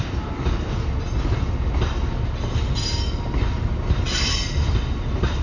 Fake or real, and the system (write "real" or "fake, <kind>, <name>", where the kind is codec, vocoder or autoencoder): real